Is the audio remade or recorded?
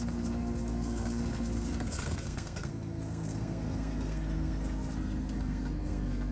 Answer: remade